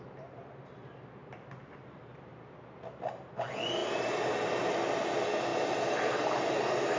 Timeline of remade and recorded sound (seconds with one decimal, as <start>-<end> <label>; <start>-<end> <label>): 0.0-5.5 recorded; 5.5-7.0 remade